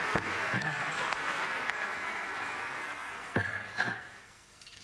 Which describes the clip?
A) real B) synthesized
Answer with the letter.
B